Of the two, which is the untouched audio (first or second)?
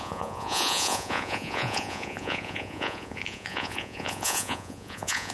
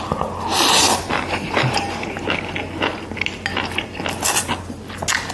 second